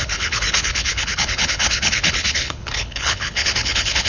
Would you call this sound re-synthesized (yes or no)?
yes